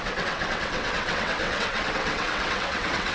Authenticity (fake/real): fake